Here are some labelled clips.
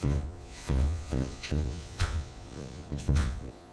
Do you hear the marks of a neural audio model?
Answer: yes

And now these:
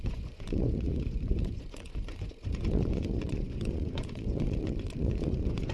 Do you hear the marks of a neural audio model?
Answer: yes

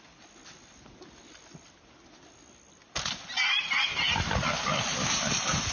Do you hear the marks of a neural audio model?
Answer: no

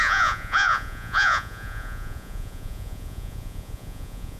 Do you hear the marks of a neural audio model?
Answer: yes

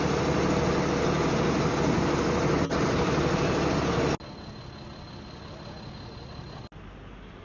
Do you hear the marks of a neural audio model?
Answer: no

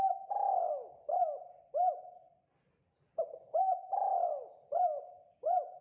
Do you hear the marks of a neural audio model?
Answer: no